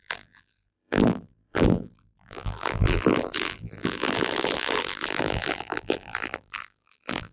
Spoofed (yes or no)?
yes